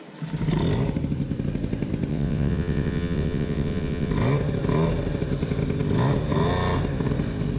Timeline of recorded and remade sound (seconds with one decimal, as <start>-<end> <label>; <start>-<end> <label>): 0.0-2.1 recorded; 2.1-4.1 remade; 4.1-7.6 recorded